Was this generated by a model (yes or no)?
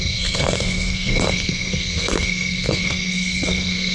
yes